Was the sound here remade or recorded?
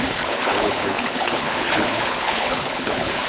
remade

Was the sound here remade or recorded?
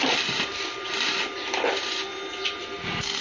recorded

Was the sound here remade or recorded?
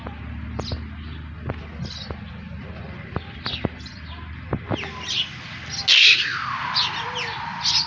recorded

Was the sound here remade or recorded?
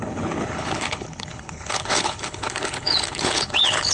remade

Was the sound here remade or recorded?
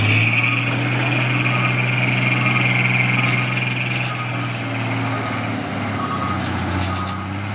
recorded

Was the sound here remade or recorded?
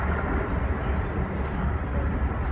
recorded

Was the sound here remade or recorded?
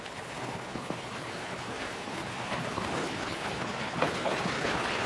remade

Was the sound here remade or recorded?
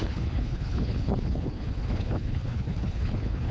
remade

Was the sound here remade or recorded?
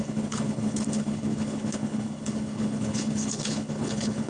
remade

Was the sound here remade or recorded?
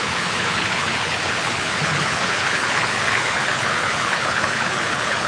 remade